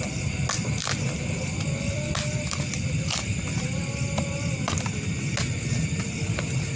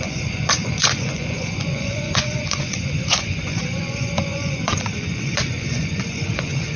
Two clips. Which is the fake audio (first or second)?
second